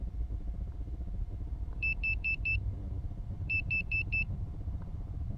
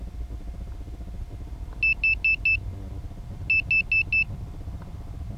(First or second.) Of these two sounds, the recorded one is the second